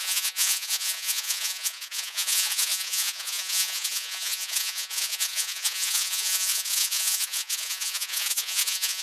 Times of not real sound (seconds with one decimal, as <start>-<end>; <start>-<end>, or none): 0.0-9.0